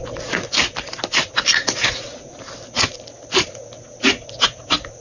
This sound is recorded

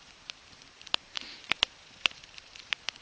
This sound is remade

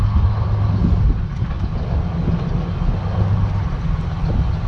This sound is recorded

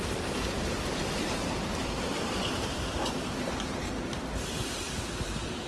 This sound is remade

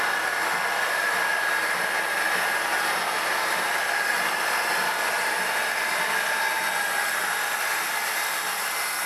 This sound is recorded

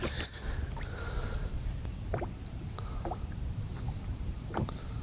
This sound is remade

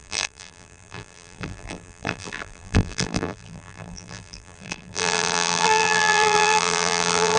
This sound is remade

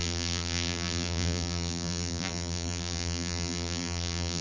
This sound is remade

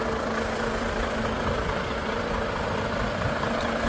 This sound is remade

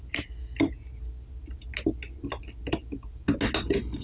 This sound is recorded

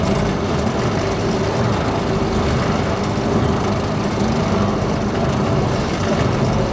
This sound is remade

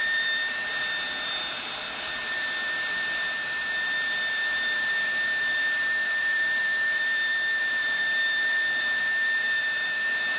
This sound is remade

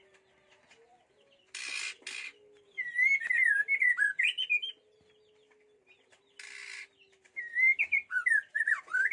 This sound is recorded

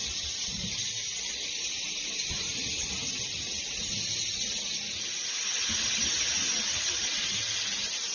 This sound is recorded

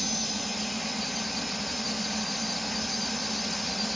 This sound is recorded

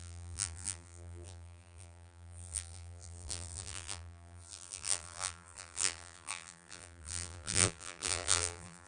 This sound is remade